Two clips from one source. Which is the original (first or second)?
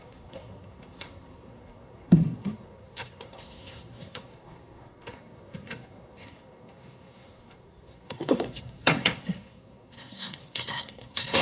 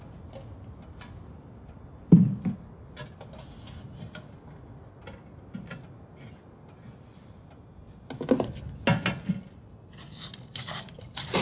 second